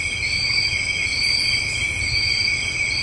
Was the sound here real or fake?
real